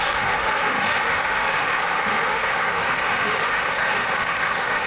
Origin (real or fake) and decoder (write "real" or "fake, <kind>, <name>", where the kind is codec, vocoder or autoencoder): fake, autoencoder, DAC-VAE